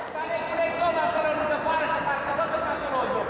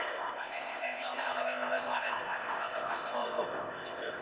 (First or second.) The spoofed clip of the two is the second